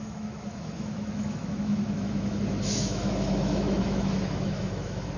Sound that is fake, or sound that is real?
fake